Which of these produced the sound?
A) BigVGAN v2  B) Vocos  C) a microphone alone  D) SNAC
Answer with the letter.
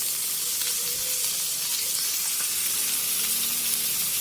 C